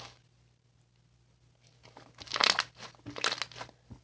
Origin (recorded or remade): recorded